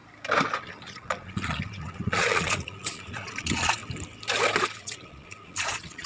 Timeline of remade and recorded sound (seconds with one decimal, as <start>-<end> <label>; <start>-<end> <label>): 0.0-0.6 recorded; 0.6-3.8 remade; 3.8-4.8 recorded; 4.8-6.1 remade